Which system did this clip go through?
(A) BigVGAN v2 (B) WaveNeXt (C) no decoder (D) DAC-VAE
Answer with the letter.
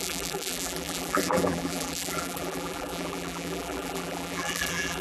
A